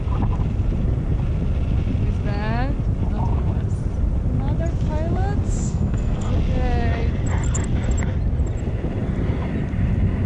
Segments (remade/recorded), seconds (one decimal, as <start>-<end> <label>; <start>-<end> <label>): 0.0-5.6 recorded; 5.6-6.3 remade; 6.3-10.3 recorded